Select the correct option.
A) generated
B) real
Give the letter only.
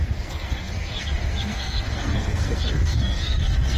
A